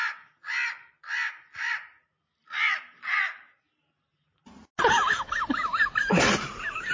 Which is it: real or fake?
real